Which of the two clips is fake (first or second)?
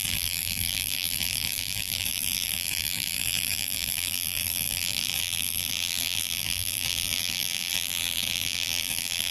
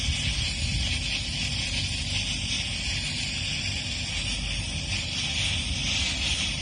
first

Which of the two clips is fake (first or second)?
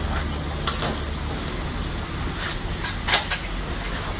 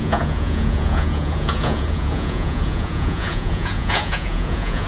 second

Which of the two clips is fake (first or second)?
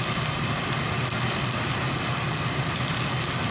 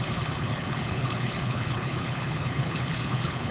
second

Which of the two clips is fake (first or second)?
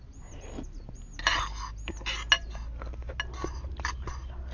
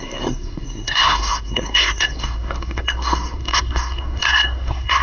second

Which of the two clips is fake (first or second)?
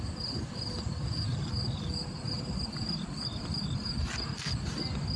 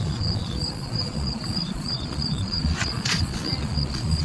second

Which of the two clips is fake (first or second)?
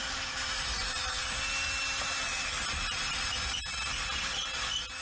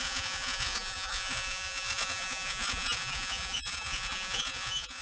second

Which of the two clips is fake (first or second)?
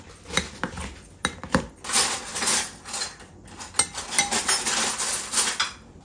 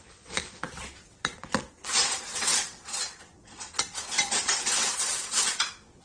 second